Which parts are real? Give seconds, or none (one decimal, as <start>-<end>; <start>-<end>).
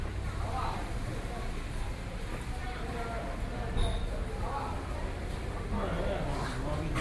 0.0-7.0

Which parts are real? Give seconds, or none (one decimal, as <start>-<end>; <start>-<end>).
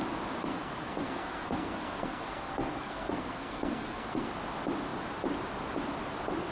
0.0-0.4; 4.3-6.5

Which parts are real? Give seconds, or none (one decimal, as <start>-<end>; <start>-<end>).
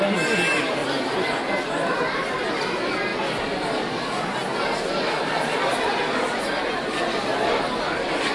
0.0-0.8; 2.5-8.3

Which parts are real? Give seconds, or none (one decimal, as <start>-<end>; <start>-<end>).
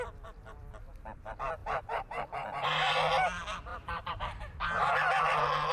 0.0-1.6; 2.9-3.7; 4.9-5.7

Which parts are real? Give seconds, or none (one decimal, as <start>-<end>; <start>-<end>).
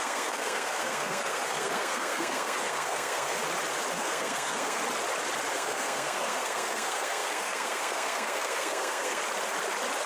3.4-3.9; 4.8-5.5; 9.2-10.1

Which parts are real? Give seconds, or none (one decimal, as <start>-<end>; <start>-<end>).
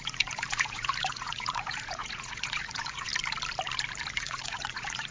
3.1-4.1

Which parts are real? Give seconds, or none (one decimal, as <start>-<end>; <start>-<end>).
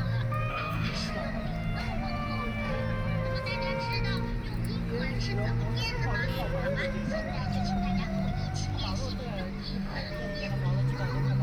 0.0-0.5; 1.1-9.6; 10.1-11.4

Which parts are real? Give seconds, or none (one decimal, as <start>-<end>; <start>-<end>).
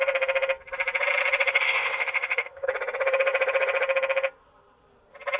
0.0-1.5; 2.7-5.4